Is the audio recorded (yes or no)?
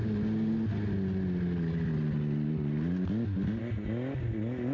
yes